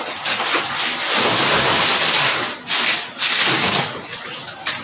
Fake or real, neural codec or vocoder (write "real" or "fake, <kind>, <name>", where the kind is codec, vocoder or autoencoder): real